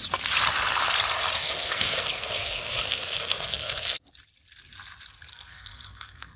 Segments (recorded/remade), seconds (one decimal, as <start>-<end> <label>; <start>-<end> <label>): 0.0-1.4 recorded; 1.4-4.1 remade; 4.1-5.3 recorded; 5.3-6.4 remade